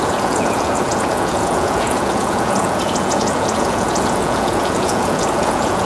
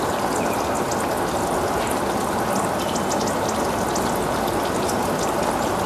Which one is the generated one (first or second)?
first